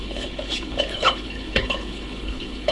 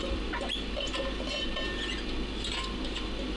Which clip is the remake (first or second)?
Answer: first